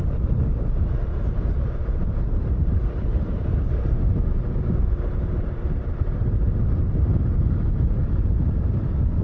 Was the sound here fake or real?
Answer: fake